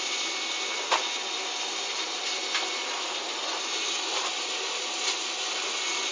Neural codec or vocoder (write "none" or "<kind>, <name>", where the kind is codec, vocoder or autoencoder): none